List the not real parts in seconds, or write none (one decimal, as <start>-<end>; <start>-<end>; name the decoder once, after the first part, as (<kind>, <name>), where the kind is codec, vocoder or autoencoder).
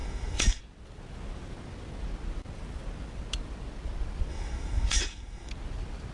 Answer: 0.0-0.6 (autoencoder, DAC-VAE); 4.3-5.5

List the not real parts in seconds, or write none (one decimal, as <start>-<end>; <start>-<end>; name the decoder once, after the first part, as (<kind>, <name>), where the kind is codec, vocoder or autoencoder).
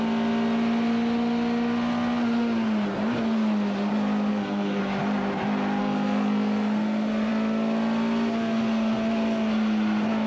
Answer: 4.3-4.8 (codec, SNAC); 5.8-7.3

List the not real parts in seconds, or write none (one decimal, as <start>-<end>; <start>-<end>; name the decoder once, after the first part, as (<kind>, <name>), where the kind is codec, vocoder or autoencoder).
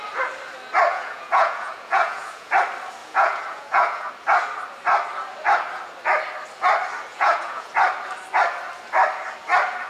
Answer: 0.9-2.5 (vocoder, Vocos); 3.0-4.1; 7.1-7.7